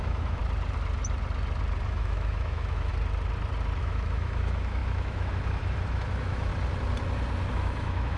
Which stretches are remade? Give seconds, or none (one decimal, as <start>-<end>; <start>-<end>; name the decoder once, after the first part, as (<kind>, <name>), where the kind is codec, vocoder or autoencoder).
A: 0.0-0.4 (autoencoder, DAC-VAE); 1.9-2.9; 3.8-6.5; 7.5-8.2